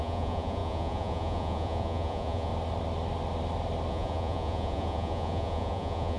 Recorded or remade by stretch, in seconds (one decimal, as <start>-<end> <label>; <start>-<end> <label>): 0.0-2.5 remade; 2.5-3.9 recorded; 3.9-6.2 remade

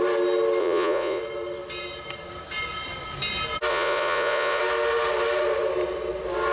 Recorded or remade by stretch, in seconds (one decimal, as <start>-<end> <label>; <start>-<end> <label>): 0.0-0.6 recorded; 0.6-1.2 remade; 1.2-3.7 recorded; 3.7-4.6 remade; 4.6-6.5 recorded

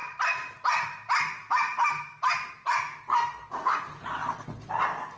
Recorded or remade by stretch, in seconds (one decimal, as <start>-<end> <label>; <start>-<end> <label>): 0.0-5.2 recorded

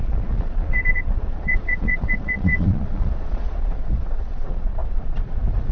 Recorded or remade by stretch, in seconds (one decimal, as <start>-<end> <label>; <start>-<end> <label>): 0.0-5.7 remade

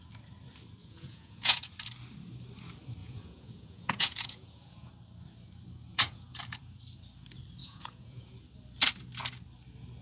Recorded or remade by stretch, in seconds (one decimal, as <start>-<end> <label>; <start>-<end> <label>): 0.0-0.8 recorded; 0.8-1.7 remade; 1.7-3.0 recorded; 3.0-4.9 remade; 4.9-5.9 recorded; 5.9-6.4 remade; 6.4-7.6 recorded; 7.6-8.3 remade; 8.3-10.0 recorded